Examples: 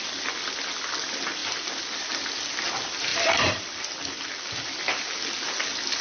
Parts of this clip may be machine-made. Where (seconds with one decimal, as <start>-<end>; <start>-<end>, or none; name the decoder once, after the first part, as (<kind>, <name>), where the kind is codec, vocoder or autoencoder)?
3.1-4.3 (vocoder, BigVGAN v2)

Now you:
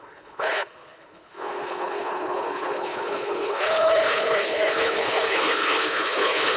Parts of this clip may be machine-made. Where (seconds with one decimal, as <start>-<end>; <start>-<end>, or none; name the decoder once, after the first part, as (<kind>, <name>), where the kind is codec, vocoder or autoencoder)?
0.0-6.6 (codec, HILCodec)

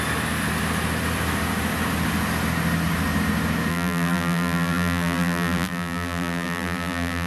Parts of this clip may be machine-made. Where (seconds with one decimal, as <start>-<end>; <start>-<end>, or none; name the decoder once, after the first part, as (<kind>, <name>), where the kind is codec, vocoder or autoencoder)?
3.7-7.3 (vocoder, BigVGAN v2)